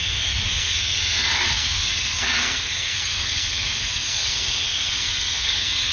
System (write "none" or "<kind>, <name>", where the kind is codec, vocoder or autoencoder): codec, SNAC